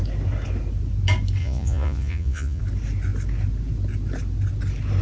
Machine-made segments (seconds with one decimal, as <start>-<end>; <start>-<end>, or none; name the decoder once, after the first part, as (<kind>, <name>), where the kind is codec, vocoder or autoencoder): 1.4-2.6 (vocoder, Vocos)